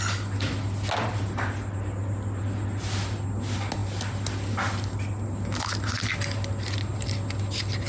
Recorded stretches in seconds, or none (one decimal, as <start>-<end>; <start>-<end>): 0.0-7.9